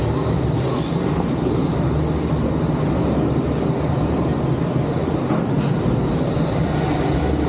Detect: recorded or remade recorded